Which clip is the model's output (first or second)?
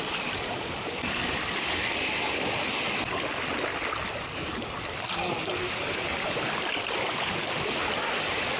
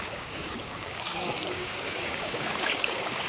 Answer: second